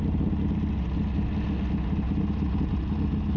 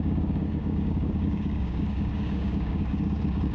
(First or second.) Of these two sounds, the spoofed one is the second